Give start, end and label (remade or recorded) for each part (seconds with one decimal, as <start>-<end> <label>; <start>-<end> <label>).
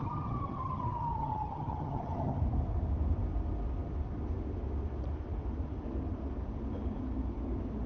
0.0-2.4 remade; 2.4-7.9 recorded